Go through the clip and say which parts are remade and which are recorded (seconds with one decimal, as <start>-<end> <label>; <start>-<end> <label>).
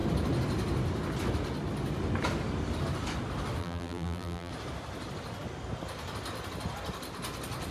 0.0-3.6 recorded; 3.6-4.5 remade; 4.5-7.7 recorded